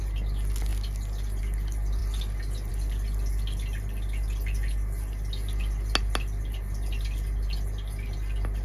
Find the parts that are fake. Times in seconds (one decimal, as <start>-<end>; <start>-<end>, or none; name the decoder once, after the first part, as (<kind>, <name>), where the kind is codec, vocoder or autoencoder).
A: none